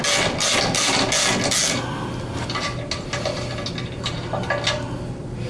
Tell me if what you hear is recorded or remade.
recorded